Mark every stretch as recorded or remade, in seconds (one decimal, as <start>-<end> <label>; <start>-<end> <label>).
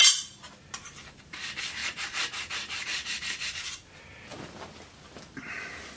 0.0-1.8 recorded; 1.8-3.6 remade; 3.6-6.0 recorded